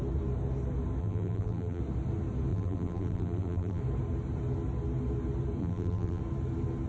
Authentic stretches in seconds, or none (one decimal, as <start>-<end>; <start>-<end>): 0.0-1.0; 1.8-2.5; 3.8-5.6; 6.2-6.9